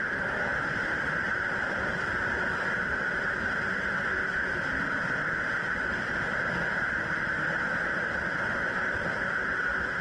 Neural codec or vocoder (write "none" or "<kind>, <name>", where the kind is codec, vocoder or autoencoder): none